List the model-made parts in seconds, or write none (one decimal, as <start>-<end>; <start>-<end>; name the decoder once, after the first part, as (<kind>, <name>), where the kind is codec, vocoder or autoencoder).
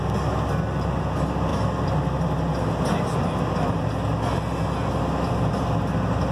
none